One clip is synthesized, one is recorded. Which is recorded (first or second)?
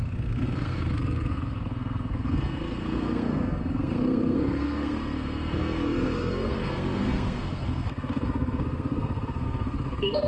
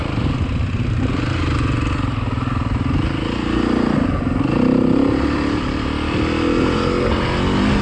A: second